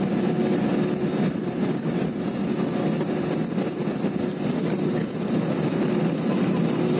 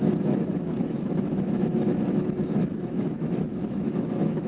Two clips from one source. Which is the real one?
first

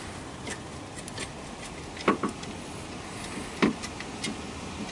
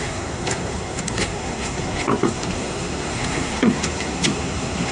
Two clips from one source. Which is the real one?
first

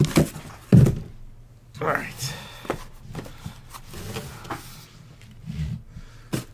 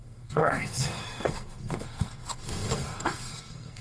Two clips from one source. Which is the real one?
first